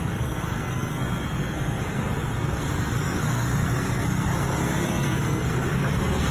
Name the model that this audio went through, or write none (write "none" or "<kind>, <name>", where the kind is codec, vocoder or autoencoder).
codec, SNAC